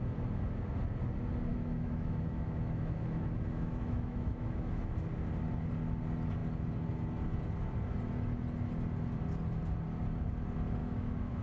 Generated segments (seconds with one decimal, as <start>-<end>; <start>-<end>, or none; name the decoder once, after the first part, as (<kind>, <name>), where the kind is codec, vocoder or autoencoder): 1.5-4.8 (autoencoder, DAC-VAE); 10.8-11.4